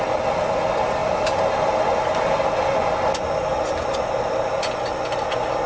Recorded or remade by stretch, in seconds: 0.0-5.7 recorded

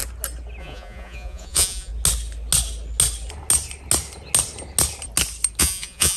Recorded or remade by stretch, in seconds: 0.0-0.6 recorded; 0.6-1.9 remade; 1.9-5.6 recorded; 5.6-6.2 remade

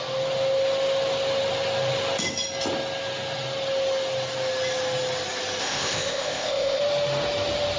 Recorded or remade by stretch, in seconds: 0.0-5.6 recorded; 5.6-6.8 remade; 6.8-7.8 recorded

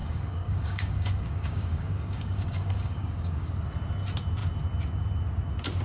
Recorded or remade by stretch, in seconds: 0.0-3.5 remade; 3.5-5.8 recorded